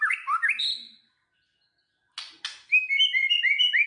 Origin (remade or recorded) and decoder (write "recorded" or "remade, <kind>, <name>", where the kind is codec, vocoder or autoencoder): recorded